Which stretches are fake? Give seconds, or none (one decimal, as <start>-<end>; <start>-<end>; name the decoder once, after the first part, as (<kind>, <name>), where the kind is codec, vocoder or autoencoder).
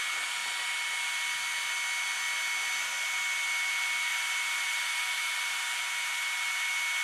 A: 4.1-5.8 (vocoder, BigVGAN v2)